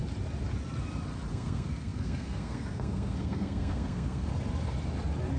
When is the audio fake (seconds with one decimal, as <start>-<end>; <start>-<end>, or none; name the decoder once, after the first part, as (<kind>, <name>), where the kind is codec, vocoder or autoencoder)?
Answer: 1.3-4.3 (codec, SNAC)